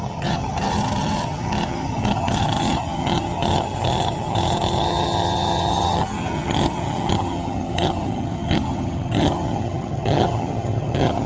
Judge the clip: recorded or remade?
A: remade